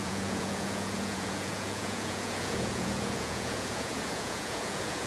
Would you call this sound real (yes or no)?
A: no